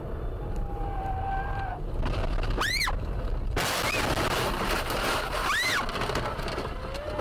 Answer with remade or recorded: recorded